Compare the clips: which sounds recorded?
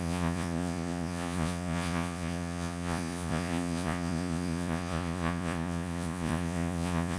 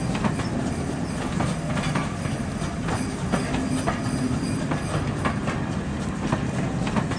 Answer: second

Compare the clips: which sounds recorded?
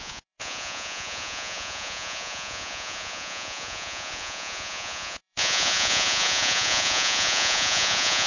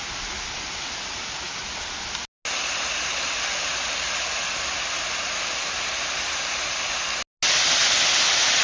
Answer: second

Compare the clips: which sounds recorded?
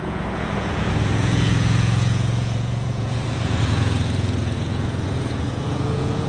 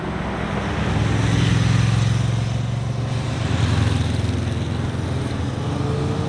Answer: second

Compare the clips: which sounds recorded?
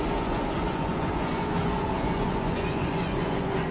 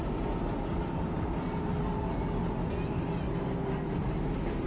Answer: second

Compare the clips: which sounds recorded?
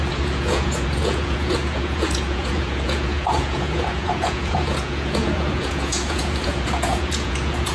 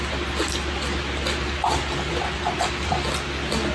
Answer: second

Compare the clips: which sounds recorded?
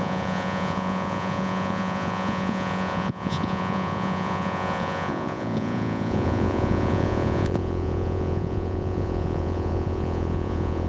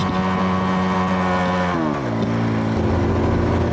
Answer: second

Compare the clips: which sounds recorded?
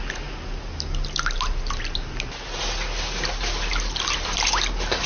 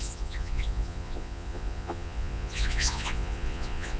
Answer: first